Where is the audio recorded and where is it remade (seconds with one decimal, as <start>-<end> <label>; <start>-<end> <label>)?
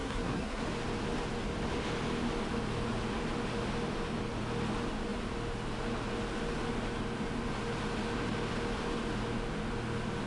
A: 0.0-0.6 remade; 0.6-10.3 recorded